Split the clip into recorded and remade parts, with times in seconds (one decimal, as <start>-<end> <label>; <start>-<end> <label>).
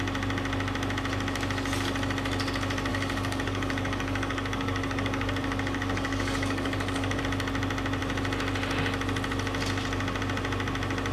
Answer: 0.0-2.9 recorded; 2.9-7.2 remade; 7.2-11.1 recorded